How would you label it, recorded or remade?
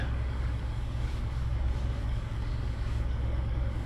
remade